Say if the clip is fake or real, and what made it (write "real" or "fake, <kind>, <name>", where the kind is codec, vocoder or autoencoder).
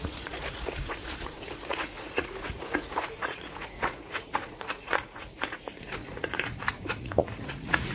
fake, vocoder, Vocos